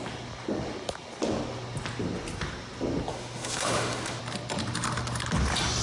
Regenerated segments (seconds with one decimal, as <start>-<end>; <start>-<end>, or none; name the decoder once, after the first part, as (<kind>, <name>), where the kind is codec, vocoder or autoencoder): 3.1-4.2 (autoencoder, DAC-VAE)